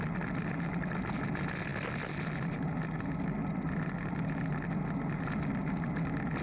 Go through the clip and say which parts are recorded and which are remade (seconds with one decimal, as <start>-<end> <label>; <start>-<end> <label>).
0.0-6.4 recorded